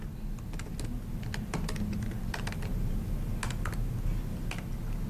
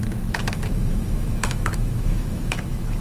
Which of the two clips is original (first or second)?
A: first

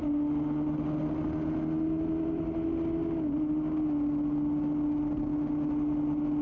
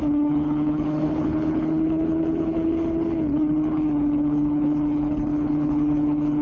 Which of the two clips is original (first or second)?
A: first